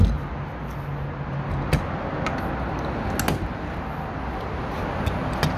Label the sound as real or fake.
real